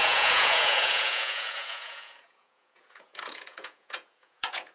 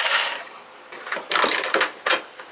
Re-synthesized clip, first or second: first